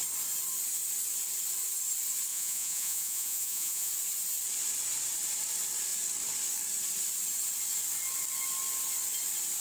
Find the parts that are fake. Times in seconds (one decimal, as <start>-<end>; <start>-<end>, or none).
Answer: 2.3-3.9